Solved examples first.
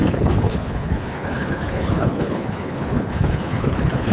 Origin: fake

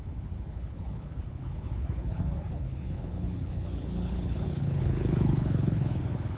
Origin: fake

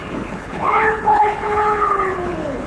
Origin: fake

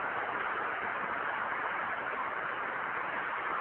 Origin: real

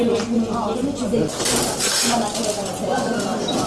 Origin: real